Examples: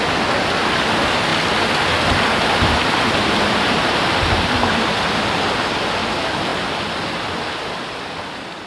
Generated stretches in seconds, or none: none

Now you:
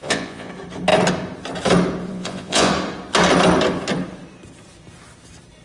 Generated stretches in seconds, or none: 0.0-0.5 (vocoder, Vocos); 2.1-2.7

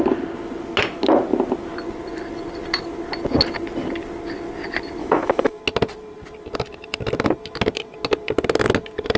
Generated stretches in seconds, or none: 5.0-5.6 (autoencoder, DAC-VAE)